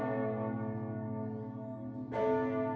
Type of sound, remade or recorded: recorded